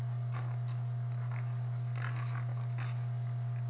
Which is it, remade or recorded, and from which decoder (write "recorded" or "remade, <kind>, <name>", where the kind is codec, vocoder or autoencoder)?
recorded